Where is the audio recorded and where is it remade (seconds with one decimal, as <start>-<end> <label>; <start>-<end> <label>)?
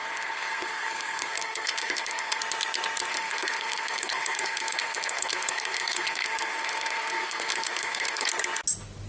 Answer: 0.0-2.4 remade; 2.4-3.1 recorded; 3.1-8.3 remade; 8.3-9.1 recorded